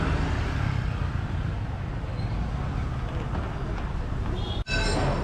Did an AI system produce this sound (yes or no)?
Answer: no